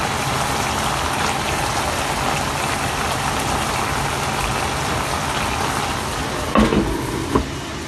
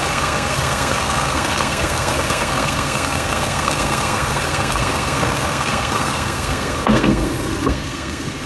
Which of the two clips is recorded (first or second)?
first